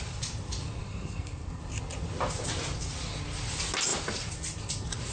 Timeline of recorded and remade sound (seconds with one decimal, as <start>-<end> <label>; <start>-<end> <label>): 0.0-0.8 recorded; 0.8-1.6 remade; 1.6-5.1 recorded